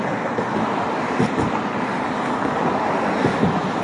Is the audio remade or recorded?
recorded